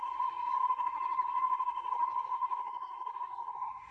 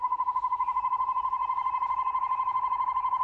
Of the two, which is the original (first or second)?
second